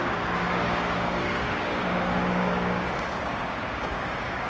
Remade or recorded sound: remade